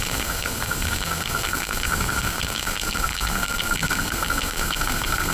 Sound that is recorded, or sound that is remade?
remade